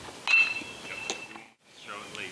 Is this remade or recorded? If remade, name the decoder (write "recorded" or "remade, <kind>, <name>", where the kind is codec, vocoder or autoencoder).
recorded